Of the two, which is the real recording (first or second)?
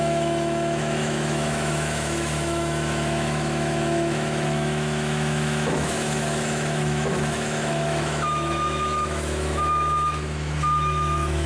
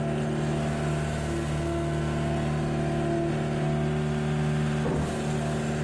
second